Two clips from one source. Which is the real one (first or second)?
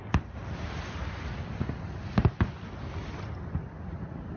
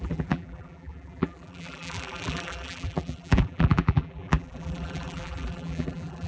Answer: first